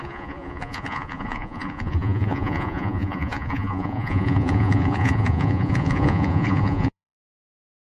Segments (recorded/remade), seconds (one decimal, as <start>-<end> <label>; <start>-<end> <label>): 0.0-7.8 remade